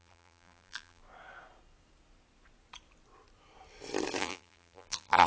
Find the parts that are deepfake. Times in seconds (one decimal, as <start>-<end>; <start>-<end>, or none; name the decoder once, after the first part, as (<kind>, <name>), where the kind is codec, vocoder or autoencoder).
0.0-1.0 (vocoder, BigVGAN v2); 4.2-5.3

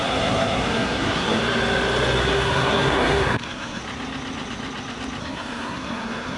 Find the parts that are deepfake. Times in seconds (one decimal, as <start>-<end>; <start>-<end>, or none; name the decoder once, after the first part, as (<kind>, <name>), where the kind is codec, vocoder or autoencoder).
0.0-1.4 (codec, SNAC); 2.2-3.8; 5.2-6.4

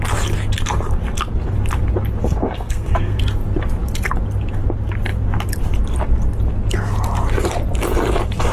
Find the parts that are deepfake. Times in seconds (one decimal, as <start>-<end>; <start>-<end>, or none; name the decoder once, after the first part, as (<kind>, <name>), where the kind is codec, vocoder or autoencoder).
2.4-3.2 (codec, SNAC)

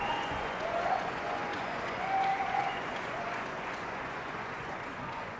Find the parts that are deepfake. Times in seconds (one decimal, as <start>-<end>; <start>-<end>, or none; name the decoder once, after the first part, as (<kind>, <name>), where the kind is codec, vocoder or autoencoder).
0.0-5.4 (vocoder, Vocos)